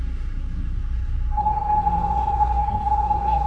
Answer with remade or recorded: remade